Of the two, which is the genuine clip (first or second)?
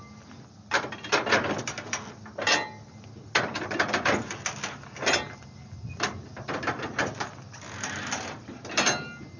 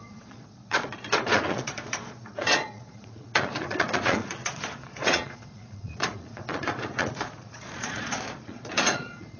first